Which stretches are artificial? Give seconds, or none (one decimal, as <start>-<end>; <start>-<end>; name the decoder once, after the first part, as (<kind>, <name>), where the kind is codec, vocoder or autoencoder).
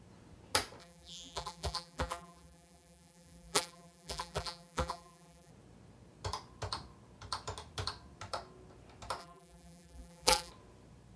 0.8-5.5 (vocoder, BigVGAN v2); 9.2-10.5